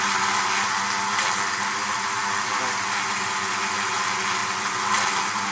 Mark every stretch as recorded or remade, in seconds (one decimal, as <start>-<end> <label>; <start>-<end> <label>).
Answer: 0.0-5.5 recorded